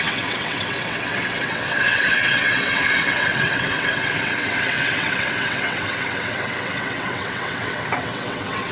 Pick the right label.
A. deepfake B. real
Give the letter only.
A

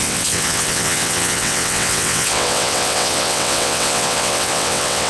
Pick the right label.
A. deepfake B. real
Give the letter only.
A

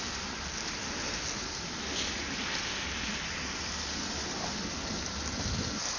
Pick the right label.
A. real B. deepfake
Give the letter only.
A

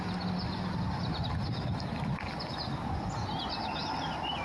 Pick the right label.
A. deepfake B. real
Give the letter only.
B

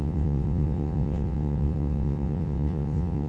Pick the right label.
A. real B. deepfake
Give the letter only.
B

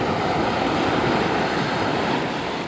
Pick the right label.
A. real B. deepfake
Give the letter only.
A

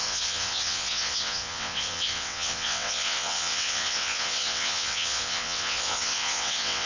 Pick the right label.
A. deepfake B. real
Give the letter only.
A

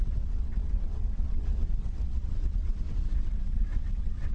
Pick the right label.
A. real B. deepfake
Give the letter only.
B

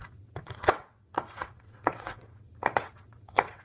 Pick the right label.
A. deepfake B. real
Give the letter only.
A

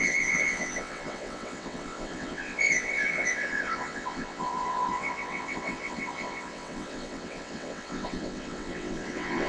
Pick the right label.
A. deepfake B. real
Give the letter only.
A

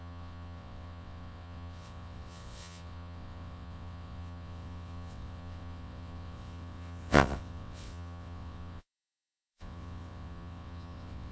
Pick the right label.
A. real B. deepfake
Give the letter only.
B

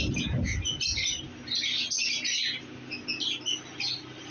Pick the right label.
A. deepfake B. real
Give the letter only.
B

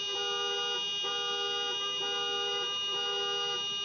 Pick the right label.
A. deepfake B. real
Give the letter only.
B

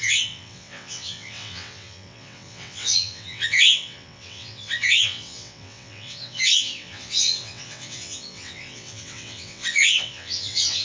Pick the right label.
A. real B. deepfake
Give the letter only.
B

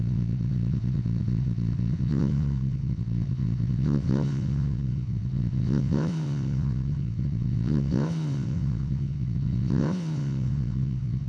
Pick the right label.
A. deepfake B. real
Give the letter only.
A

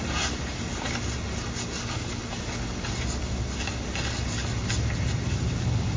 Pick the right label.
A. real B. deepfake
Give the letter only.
A